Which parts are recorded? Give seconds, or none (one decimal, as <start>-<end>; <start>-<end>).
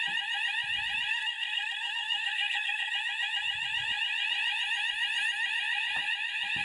0.0-1.1; 2.9-6.6